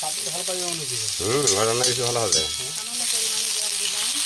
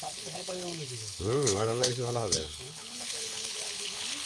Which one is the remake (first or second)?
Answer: second